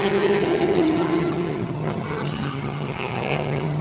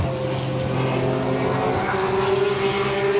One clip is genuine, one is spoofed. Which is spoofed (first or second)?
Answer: first